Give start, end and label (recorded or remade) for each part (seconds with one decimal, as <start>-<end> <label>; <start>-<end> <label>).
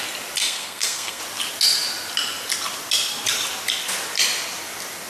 0.0-0.4 recorded; 0.4-1.2 remade; 1.2-5.1 recorded